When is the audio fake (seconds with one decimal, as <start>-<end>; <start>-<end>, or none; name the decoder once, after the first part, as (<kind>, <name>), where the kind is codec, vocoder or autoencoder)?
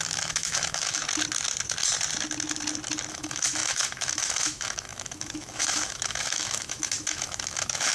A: 0.0-1.0 (autoencoder, DAC-VAE); 3.1-7.9